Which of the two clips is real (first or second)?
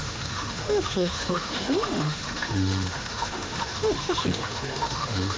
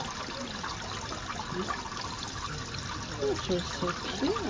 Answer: second